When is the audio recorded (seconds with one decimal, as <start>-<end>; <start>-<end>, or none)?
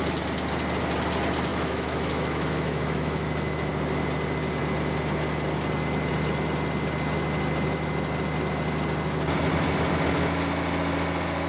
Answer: 0.0-1.5; 3.7-11.5